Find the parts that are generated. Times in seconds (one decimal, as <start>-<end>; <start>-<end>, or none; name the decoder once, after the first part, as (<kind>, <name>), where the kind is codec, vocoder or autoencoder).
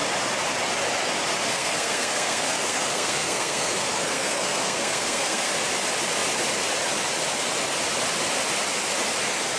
1.5-5.5 (codec, SNAC)